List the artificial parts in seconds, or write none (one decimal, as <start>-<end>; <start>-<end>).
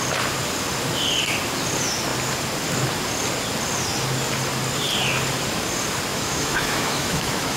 6.1-7.6